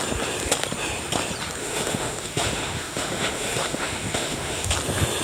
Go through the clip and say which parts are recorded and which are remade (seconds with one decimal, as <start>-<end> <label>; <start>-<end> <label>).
0.0-1.6 recorded; 1.6-4.7 remade; 4.7-5.2 recorded